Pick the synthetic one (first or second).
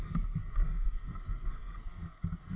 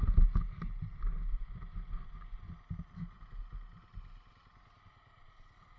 first